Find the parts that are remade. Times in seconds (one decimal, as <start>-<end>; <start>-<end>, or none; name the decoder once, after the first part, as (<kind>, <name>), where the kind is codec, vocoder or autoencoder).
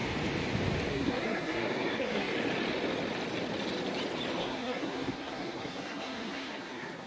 0.9-2.3 (codec, SNAC); 4.4-7.1